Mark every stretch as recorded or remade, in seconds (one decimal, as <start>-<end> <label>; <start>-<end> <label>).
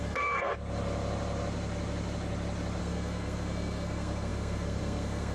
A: 0.0-0.5 remade; 0.5-2.8 recorded; 2.8-5.3 remade